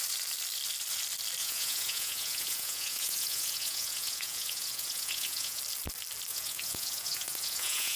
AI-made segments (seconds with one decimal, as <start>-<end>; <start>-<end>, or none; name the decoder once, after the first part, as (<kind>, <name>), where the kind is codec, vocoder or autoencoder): 1.4-5.6 (vocoder, Vocos); 6.3-8.0

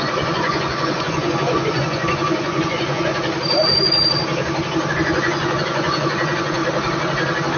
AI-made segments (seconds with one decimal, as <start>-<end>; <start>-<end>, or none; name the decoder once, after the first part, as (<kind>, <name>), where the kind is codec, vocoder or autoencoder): 0.0-3.1 (vocoder, Vocos); 4.9-6.6

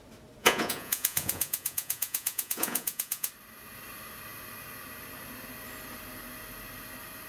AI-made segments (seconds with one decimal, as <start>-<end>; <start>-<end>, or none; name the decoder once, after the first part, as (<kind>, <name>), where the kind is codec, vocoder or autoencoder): 0.4-3.3 (vocoder, Vocos)

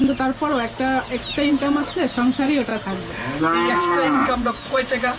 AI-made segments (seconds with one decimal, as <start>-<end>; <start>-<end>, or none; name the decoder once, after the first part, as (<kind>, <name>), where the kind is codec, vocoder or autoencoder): 1.5-2.7 (vocoder, Vocos); 3.7-5.2

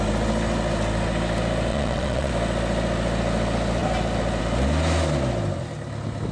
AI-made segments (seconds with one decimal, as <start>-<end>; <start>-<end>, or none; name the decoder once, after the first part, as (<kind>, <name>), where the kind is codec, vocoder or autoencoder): 1.7-2.3 (vocoder, Vocos)

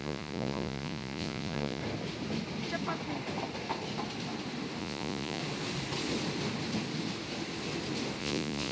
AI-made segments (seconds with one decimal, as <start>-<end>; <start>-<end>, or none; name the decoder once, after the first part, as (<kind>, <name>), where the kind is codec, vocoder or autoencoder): 0.0-1.8 (vocoder, Vocos); 4.8-5.4; 8.2-8.7